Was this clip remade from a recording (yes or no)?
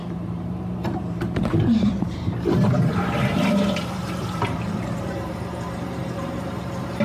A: yes